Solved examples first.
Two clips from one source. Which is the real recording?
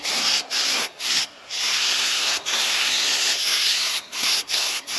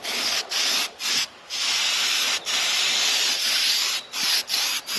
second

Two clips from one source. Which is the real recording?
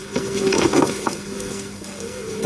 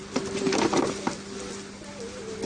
second